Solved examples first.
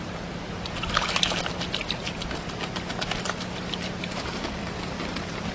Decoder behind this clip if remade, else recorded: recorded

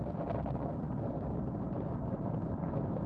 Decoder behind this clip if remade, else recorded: recorded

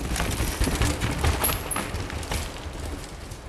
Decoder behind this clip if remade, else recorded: recorded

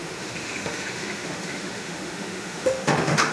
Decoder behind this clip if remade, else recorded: remade, autoencoder, DAC-VAE